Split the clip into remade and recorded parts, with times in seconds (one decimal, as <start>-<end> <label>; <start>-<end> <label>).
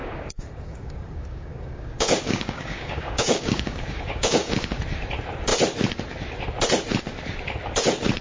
0.0-4.8 remade; 4.8-8.2 recorded